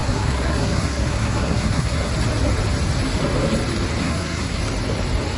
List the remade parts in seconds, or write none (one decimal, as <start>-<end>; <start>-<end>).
0.0-2.1; 4.0-4.6